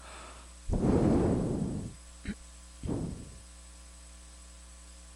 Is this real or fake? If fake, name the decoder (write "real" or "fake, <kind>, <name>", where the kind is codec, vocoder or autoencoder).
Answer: real